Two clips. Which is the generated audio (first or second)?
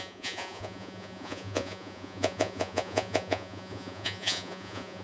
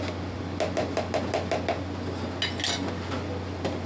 first